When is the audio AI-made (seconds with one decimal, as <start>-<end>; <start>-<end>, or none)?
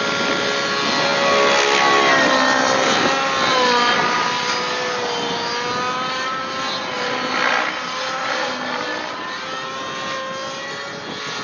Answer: none